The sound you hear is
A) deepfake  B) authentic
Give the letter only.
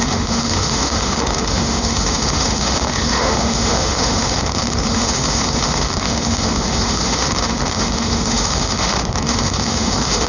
A